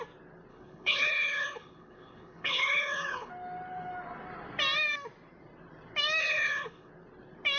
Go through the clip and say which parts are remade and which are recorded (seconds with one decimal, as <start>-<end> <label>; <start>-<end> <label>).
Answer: 0.0-0.5 recorded; 0.5-3.3 remade; 3.3-6.2 recorded; 6.2-6.9 remade; 6.9-7.6 recorded

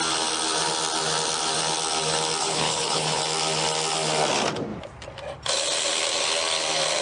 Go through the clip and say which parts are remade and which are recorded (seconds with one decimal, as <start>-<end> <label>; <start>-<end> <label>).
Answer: 0.0-2.4 recorded; 2.4-3.2 remade; 3.2-7.0 recorded

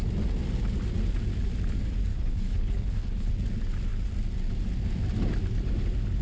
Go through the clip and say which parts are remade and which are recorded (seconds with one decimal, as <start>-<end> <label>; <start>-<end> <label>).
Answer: 0.0-2.1 recorded; 2.1-3.3 remade; 3.3-6.2 recorded

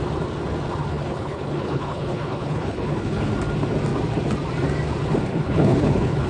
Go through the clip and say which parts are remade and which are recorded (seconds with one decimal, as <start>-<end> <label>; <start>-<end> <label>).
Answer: 0.0-0.9 recorded; 0.9-3.3 remade; 3.3-5.3 recorded; 5.3-6.3 remade